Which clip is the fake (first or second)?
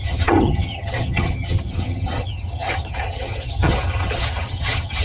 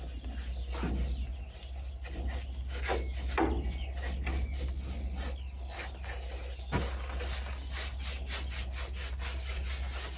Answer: first